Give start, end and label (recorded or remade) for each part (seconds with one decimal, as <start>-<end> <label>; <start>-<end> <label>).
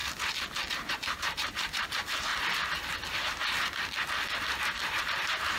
0.0-0.9 recorded; 0.9-2.3 remade; 2.3-5.0 recorded; 5.0-5.6 remade